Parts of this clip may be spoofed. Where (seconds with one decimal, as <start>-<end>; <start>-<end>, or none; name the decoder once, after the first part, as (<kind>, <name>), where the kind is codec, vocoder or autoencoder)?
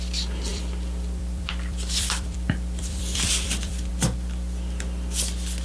0.5-3.9 (vocoder, BigVGAN v2)